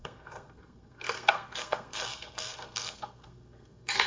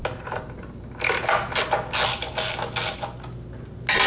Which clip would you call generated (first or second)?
first